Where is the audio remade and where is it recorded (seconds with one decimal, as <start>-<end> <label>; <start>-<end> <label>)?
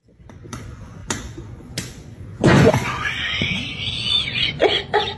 0.0-5.2 remade